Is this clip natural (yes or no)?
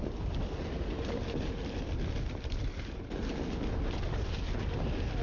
yes